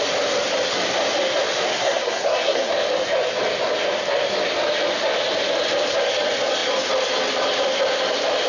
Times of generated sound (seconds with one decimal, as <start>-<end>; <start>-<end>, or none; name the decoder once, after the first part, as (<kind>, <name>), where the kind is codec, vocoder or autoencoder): 1.7-2.7 (codec, SNAC)

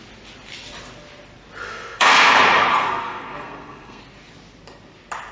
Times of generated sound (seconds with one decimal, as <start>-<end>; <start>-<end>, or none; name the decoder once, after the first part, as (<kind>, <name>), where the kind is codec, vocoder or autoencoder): 1.6-2.3 (codec, SNAC); 2.7-4.0

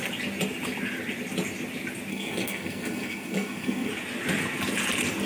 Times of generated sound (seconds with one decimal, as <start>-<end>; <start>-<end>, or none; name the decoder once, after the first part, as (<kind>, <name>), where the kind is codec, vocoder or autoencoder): 2.1-3.9 (codec, SNAC)

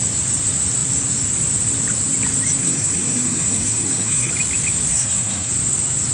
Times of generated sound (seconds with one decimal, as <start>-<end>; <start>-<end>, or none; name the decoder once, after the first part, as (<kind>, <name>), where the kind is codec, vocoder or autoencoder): 2.6-4.3 (codec, SNAC); 4.9-5.5

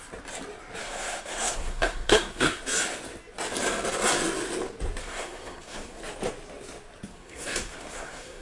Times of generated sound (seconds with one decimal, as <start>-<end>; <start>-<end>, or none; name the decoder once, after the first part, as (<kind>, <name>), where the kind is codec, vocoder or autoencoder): 0.8-2.6 (codec, SNAC); 5.0-6.0; 7.1-8.4

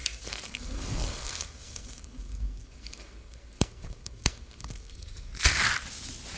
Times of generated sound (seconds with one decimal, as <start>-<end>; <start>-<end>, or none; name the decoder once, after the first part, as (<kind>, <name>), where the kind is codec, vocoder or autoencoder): 0.0-5.3 (codec, SNAC)